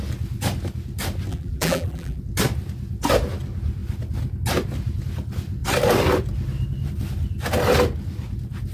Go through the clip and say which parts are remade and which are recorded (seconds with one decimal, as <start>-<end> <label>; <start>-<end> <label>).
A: 0.0-1.3 recorded; 1.3-2.2 remade; 2.2-8.7 recorded